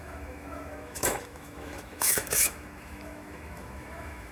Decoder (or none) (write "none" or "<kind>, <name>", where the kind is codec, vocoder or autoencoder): autoencoder, DAC-VAE